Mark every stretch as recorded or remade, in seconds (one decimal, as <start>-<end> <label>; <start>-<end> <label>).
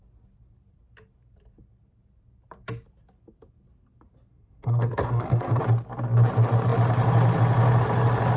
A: 0.0-4.3 recorded; 4.3-5.6 remade; 5.6-8.4 recorded